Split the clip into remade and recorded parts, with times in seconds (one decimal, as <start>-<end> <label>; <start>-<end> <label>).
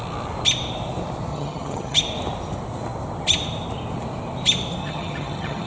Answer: 0.0-1.3 recorded; 1.3-2.0 remade; 2.0-4.8 recorded; 4.8-5.7 remade